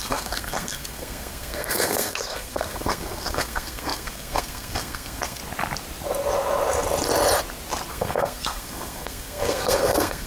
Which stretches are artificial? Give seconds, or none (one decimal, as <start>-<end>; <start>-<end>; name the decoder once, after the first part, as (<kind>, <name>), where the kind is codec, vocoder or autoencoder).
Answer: 0.0-5.4 (codec, SNAC); 7.9-10.3